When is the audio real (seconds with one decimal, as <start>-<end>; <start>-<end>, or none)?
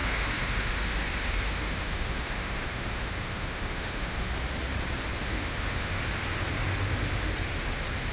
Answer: 4.3-5.2; 6.0-8.1